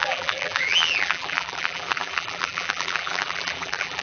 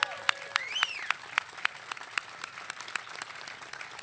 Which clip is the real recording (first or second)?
second